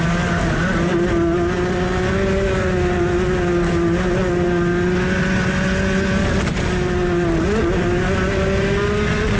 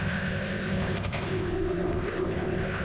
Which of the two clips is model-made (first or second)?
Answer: second